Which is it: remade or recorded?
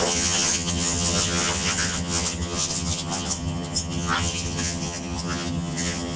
remade